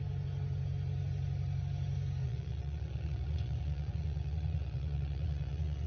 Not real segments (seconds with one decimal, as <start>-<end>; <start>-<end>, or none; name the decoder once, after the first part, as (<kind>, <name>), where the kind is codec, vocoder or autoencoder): 2.2-5.9 (vocoder, Vocos)